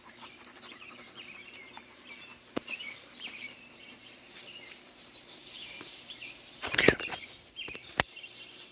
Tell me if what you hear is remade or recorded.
remade